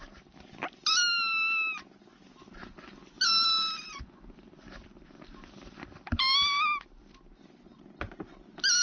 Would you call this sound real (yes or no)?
yes